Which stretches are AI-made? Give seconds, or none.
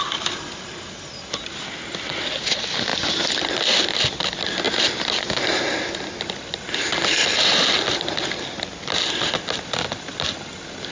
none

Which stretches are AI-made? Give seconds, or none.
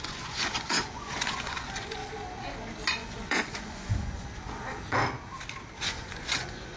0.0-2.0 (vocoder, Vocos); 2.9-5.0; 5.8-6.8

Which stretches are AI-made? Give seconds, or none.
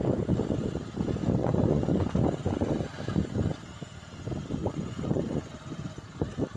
1.4-1.9 (vocoder, Vocos); 4.6-5.5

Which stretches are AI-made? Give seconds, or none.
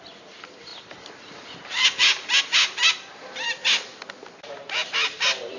none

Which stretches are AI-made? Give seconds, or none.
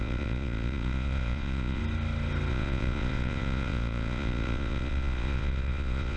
0.0-1.8 (vocoder, Vocos); 2.5-6.2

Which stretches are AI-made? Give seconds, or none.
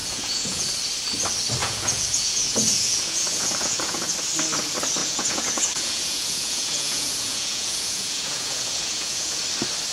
0.0-0.7 (vocoder, Vocos); 1.6-4.1; 5.0-9.4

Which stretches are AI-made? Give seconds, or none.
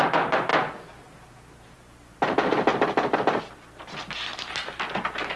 none